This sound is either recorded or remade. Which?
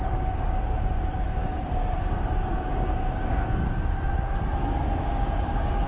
remade